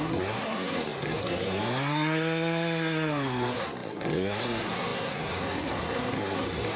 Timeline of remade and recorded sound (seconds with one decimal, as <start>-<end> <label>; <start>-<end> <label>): 0.0-6.8 remade